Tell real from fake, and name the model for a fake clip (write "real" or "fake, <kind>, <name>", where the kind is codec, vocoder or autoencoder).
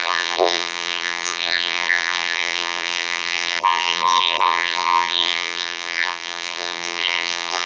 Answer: fake, vocoder, BigVGAN v2